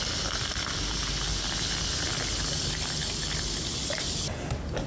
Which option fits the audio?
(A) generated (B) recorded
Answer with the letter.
B